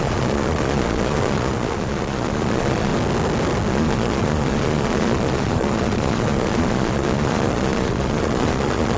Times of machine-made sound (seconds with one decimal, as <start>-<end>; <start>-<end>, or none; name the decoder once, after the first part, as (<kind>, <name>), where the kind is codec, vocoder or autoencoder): 0.0-2.9 (vocoder, Vocos); 3.7-9.0